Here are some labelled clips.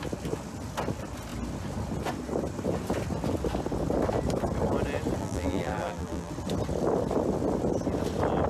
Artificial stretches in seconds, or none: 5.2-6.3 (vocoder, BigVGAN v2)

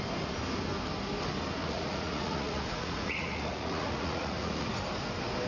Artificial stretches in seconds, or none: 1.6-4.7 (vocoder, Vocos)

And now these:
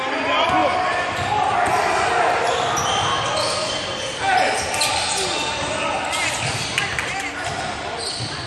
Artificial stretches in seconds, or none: none